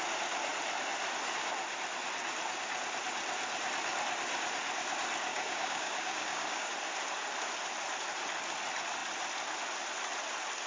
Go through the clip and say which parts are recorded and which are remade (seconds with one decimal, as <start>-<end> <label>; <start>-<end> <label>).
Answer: 0.0-5.3 recorded; 5.3-6.7 remade; 6.7-10.7 recorded